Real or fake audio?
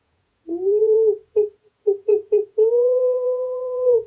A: fake